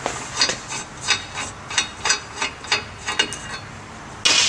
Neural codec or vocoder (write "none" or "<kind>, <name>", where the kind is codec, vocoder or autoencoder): none